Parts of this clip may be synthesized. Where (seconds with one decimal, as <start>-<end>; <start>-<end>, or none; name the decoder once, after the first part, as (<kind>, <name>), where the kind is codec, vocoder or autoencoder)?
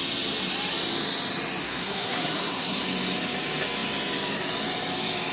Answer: 1.6-2.8 (codec, SNAC)